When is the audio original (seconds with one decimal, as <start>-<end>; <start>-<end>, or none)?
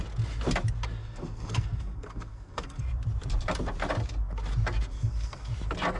0.0-1.0; 2.8-4.9; 5.5-6.0